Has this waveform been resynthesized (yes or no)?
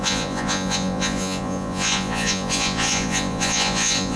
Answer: yes